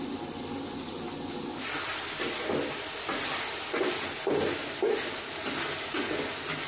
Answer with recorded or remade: recorded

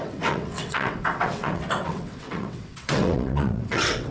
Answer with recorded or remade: remade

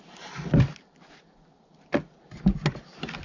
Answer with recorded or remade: recorded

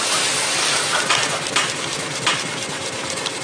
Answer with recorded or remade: recorded